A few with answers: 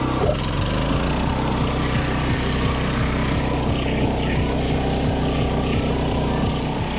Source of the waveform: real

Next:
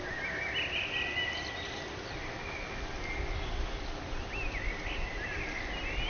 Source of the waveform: real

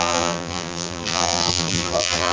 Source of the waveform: fake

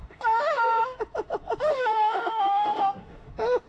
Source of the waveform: fake